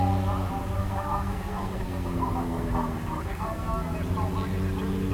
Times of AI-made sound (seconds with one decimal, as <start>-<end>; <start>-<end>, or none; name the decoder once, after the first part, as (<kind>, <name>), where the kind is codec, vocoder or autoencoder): 0.8-3.9 (codec, SNAC)